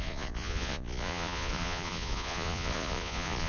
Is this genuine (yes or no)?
no